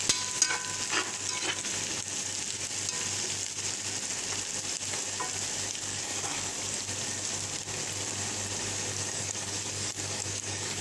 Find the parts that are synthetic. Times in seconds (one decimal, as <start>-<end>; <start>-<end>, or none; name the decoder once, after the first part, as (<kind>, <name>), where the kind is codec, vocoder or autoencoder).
5.9-6.5 (codec, DAC); 8.9-10.8

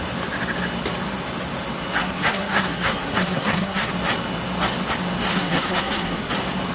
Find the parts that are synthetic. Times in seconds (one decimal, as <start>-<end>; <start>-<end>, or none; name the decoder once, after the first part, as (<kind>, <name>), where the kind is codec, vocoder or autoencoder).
2.0-3.9 (codec, SNAC); 5.3-6.3

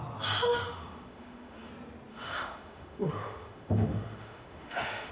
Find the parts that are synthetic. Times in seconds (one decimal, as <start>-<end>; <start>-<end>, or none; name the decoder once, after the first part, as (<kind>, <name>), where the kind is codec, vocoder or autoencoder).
0.5-1.7 (autoencoder, DAC-VAE); 2.1-5.1

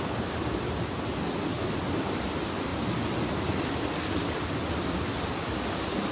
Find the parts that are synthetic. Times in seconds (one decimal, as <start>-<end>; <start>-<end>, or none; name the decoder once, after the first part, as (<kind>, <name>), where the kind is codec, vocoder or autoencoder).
none

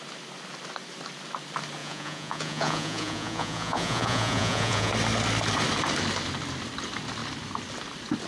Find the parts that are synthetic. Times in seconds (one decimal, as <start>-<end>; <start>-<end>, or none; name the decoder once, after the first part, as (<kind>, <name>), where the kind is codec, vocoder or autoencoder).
1.8-4.9 (vocoder, Vocos)

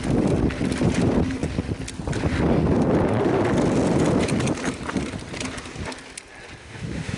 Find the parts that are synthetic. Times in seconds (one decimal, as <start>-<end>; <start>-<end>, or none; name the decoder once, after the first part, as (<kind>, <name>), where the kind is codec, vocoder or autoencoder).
6.6-7.2 (autoencoder, DAC-VAE)